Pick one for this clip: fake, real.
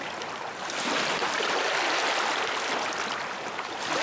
real